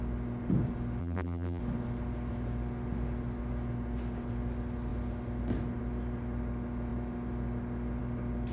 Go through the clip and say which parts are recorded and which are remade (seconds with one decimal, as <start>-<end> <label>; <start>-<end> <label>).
0.0-1.0 recorded; 1.0-1.6 remade; 1.6-8.5 recorded